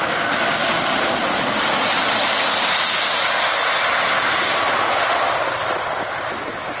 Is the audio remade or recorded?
recorded